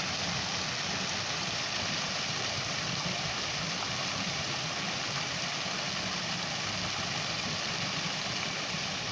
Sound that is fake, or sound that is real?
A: real